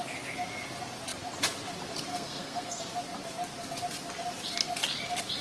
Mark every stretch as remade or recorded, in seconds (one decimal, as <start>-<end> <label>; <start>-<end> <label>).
0.0-2.1 recorded; 2.1-2.8 remade; 2.8-5.4 recorded